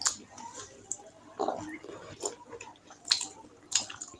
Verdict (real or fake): real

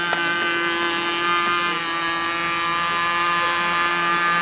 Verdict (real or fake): real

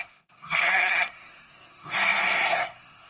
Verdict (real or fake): fake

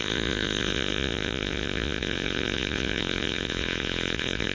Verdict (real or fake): fake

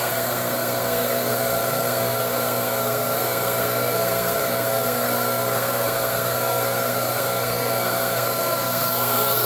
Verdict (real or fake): fake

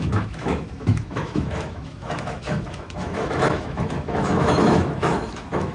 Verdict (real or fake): fake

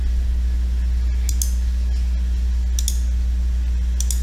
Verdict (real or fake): real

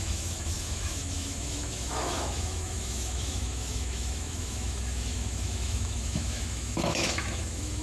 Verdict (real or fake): fake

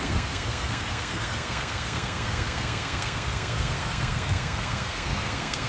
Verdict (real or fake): fake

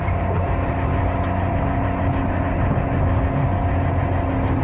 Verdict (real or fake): real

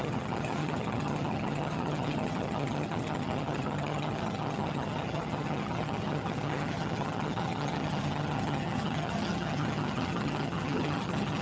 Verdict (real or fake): fake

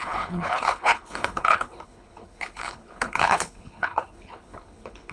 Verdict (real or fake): fake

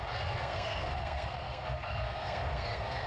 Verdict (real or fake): fake